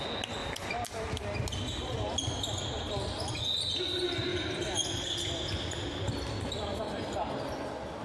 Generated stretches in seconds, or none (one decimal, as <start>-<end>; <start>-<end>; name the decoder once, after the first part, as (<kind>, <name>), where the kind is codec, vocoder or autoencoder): none